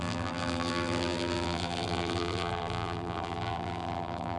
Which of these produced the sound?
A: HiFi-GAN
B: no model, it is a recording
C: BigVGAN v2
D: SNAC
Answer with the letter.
C